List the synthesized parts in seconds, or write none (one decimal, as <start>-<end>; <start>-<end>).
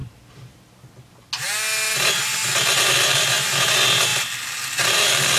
none